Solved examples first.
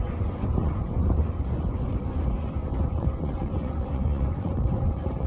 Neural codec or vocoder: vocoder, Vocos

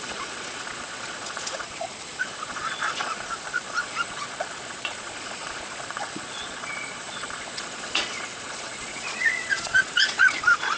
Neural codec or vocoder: vocoder, Vocos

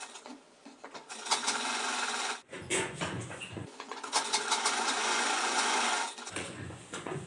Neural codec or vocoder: vocoder, Vocos